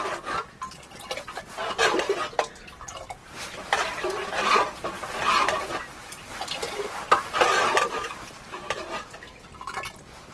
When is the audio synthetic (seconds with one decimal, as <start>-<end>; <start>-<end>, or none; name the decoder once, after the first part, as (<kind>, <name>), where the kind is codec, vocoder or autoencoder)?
none